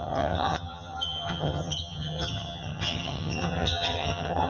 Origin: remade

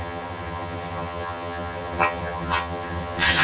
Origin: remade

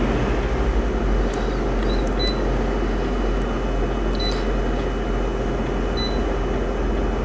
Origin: recorded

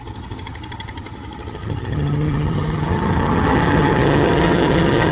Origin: remade